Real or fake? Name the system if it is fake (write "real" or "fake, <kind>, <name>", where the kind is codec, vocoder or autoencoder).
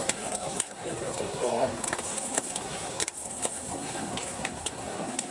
fake, codec, SNAC